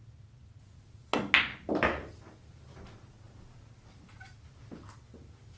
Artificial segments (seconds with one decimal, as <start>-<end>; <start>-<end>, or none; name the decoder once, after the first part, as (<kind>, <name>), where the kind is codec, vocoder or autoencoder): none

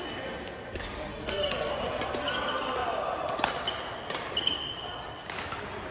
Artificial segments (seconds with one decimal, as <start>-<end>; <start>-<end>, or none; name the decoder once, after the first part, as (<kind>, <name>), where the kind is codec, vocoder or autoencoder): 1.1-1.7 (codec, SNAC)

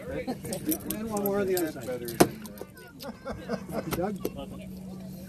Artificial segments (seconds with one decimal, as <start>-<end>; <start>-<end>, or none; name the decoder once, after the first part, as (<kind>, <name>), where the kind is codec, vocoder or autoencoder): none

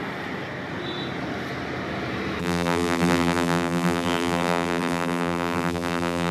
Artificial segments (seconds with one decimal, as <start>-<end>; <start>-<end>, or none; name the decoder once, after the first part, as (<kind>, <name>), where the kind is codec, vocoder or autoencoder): 2.4-6.3 (vocoder, BigVGAN v2)

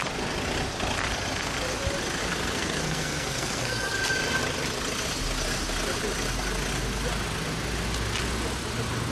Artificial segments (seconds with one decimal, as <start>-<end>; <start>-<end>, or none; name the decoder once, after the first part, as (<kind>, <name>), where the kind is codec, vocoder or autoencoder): 2.2-4.0 (codec, SNAC)